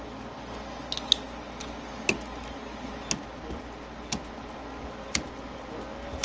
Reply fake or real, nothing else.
real